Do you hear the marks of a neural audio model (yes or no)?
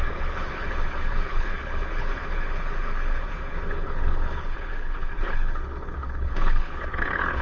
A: yes